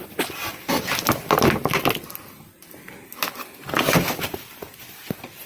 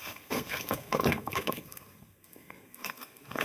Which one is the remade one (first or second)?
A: second